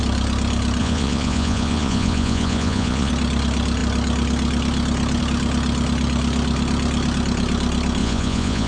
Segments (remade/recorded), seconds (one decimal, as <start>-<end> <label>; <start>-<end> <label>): 0.0-0.8 recorded; 0.8-3.1 remade; 3.1-8.0 recorded; 8.0-8.7 remade